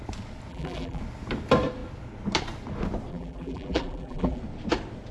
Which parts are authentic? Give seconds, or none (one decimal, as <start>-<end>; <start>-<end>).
0.0-0.5; 1.0-3.1; 4.4-5.1